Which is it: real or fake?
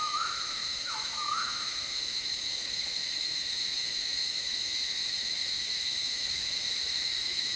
fake